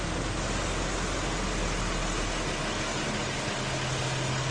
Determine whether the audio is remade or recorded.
recorded